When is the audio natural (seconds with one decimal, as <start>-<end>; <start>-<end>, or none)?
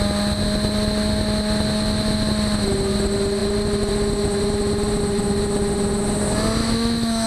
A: 0.0-6.6